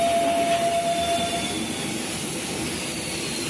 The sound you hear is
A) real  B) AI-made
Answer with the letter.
A